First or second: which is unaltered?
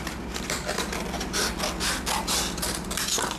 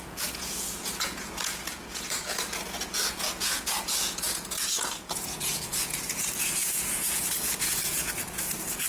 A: first